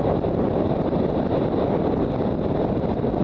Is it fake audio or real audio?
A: real